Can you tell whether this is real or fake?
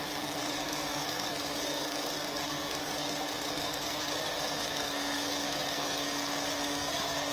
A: fake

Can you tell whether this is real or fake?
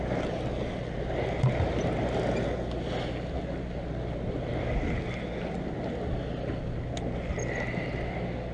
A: real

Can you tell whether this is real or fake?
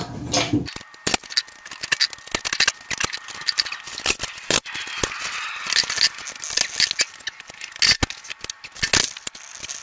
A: real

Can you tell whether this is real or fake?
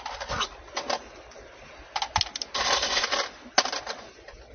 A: real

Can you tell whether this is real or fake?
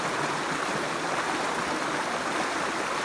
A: real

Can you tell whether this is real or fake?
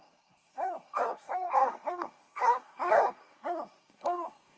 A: fake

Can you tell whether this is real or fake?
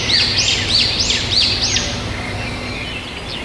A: real